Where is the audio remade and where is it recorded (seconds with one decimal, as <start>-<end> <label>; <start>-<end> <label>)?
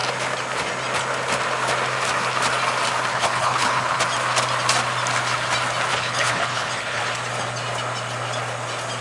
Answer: 0.0-3.1 recorded; 3.1-4.0 remade; 4.0-5.9 recorded; 5.9-7.0 remade; 7.0-9.0 recorded